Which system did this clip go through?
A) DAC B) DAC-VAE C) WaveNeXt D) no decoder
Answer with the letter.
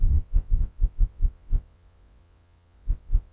C